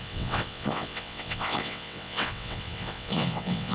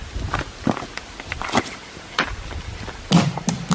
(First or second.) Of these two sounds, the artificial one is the first